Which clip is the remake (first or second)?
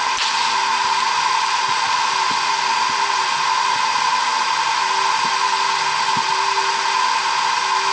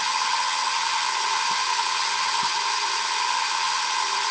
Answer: second